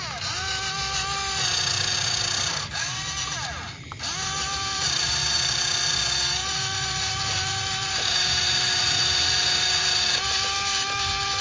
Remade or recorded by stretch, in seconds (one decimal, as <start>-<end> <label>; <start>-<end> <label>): 0.0-4.4 recorded; 4.4-5.6 remade; 5.6-6.4 recorded; 6.4-10.7 remade; 10.7-11.4 recorded